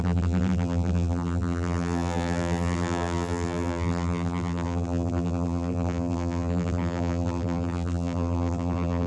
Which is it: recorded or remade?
remade